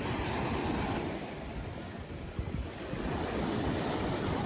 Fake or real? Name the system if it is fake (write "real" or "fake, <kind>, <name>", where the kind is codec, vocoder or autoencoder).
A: fake, vocoder, BigVGAN v2